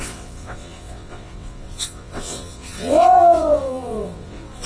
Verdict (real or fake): fake